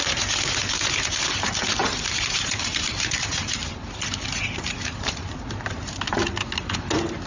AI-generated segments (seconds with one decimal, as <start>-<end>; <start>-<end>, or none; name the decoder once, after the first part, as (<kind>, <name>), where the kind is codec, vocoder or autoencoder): 1.8-6.1 (vocoder, BigVGAN v2)